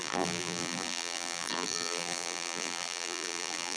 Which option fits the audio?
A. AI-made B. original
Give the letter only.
A